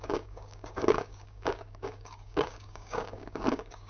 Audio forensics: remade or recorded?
remade